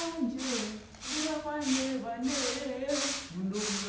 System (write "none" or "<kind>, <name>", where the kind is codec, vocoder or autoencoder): none